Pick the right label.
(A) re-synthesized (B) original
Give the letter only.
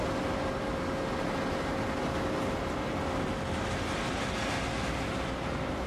B